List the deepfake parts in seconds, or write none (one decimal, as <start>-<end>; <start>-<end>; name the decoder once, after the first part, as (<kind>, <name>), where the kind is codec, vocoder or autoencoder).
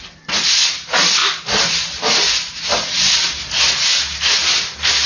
none